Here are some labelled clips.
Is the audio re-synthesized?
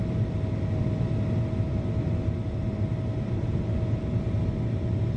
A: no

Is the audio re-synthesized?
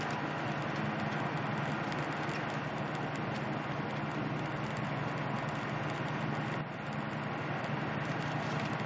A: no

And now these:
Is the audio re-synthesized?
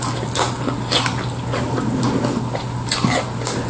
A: no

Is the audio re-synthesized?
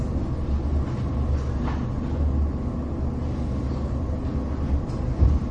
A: no